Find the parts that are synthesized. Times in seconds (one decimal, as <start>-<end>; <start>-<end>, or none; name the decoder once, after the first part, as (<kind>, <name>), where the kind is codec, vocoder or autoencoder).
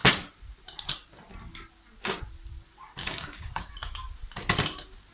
3.0-3.7 (codec, DAC)